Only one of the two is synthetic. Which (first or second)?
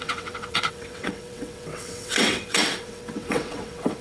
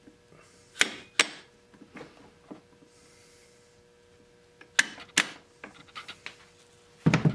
first